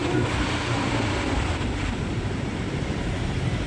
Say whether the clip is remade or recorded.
remade